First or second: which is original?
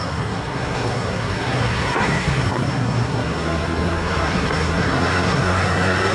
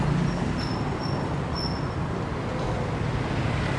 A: second